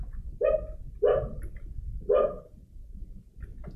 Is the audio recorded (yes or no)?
yes